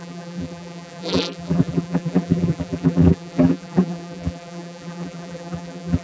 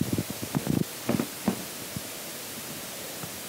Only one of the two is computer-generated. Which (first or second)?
first